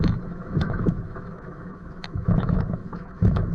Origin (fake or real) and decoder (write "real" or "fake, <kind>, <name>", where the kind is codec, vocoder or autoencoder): fake, autoencoder, DAC-VAE